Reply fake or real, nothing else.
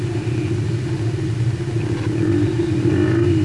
real